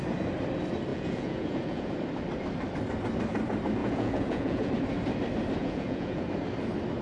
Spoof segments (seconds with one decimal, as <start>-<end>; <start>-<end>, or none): 0.9-1.9; 3.8-4.7; 5.6-6.2